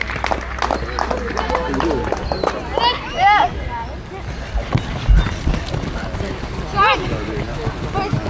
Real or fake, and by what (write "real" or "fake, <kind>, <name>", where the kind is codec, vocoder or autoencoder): real